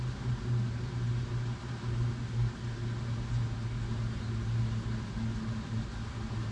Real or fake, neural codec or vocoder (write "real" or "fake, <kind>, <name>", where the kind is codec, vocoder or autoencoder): real